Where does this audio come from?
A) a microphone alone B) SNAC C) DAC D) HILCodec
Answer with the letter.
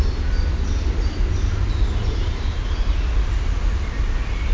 A